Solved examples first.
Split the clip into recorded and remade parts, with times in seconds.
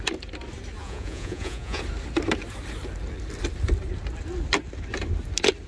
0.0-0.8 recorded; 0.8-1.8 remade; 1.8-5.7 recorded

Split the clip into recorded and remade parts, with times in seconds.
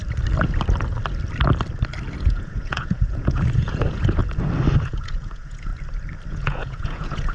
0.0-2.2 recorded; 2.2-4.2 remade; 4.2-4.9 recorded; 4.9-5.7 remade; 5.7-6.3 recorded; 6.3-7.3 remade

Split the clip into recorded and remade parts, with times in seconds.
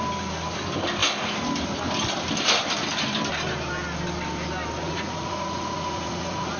0.0-4.8 recorded; 4.8-6.6 remade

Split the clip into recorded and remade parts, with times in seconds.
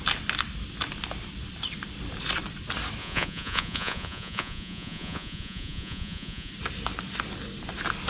0.0-3.0 recorded; 3.0-6.5 remade; 6.5-8.1 recorded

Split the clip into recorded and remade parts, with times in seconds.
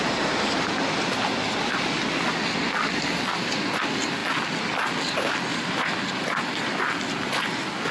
0.0-7.9 recorded